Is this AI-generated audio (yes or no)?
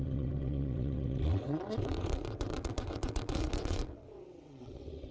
yes